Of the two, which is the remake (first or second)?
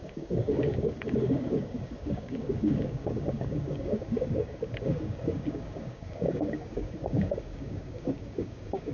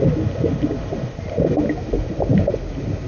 first